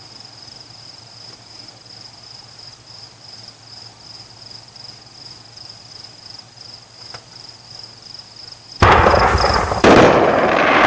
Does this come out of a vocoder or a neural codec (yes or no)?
no